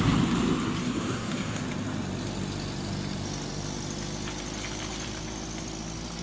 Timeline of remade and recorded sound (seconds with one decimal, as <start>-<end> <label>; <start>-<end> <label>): 0.0-0.8 recorded; 0.8-1.6 remade; 1.6-6.2 recorded